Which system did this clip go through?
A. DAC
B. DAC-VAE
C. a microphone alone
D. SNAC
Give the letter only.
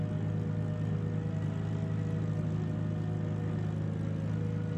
C